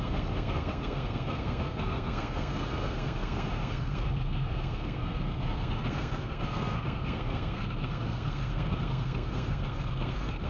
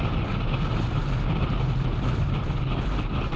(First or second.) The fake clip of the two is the first